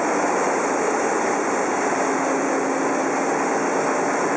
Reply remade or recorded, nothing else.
recorded